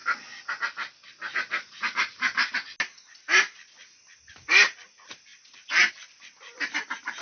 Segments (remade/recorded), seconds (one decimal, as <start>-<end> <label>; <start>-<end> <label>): 0.0-7.2 recorded